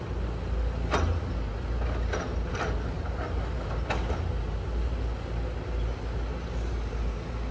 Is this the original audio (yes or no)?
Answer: yes